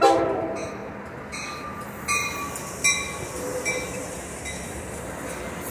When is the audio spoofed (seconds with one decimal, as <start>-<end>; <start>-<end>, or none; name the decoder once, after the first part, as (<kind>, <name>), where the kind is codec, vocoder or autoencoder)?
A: none